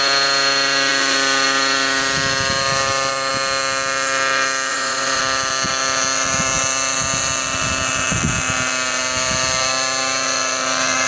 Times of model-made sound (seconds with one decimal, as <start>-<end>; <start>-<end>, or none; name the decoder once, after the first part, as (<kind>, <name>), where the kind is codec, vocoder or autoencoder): 4.7-5.2 (vocoder, Vocos)